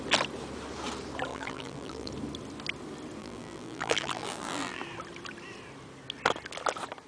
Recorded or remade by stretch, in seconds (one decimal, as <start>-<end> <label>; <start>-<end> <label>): 0.0-1.3 recorded; 1.3-2.1 remade; 2.1-3.2 recorded; 3.2-4.8 remade; 4.8-7.1 recorded